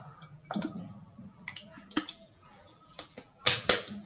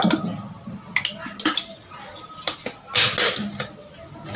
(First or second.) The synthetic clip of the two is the first